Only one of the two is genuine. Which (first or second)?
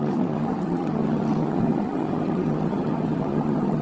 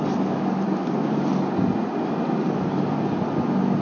second